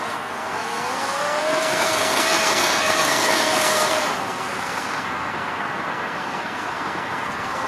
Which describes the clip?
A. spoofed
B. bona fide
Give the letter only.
A